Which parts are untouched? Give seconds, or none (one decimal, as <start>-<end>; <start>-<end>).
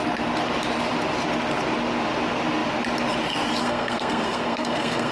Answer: 0.0-3.6